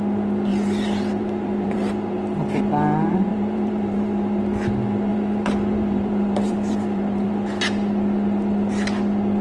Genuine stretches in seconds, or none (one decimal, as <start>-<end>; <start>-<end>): 0.0-0.5; 2.4-3.3; 4.4-5.1; 7.3-9.4